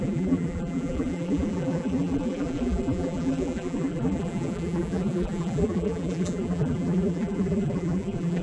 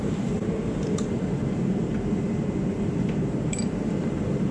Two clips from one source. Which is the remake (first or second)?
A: first